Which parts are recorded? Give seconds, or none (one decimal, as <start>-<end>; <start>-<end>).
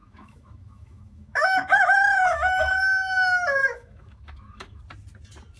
2.8-3.6; 4.8-5.6